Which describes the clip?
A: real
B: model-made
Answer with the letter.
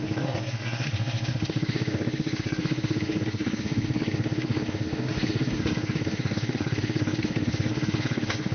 B